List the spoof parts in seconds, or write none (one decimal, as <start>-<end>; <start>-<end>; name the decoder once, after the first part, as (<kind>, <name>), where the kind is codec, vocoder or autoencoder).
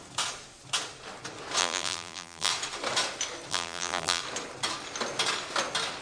1.6-2.5 (vocoder, BigVGAN v2); 3.5-4.2